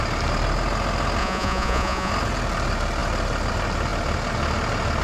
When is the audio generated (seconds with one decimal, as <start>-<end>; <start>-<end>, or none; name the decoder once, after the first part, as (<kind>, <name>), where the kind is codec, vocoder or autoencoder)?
1.2-2.1 (vocoder, Vocos)